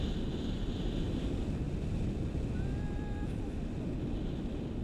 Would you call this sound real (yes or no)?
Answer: yes